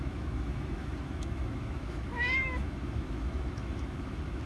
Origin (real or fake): fake